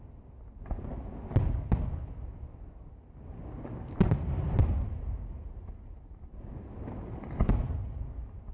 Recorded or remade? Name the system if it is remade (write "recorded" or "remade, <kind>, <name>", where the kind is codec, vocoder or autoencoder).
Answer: recorded